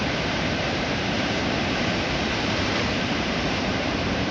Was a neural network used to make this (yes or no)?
yes